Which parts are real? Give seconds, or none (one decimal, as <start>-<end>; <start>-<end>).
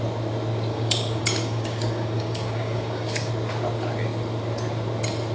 0.0-0.7; 3.3-5.3